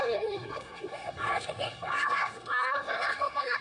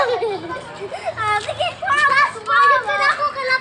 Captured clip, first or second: second